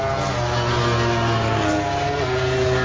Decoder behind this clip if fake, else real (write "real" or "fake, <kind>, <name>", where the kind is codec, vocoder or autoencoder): real